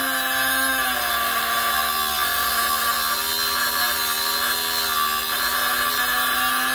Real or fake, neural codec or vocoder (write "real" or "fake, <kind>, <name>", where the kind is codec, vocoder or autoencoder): real